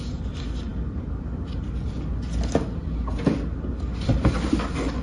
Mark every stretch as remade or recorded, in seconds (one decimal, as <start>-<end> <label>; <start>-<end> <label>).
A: 0.0-5.0 recorded